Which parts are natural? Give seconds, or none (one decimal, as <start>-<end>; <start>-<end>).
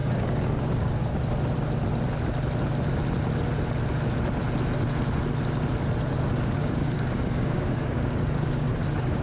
1.1-6.1